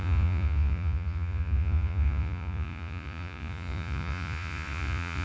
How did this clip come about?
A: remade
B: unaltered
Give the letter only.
A